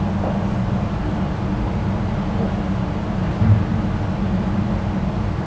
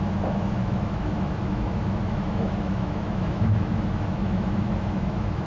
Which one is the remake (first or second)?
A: second